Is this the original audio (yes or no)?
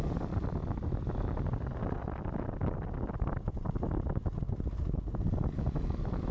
yes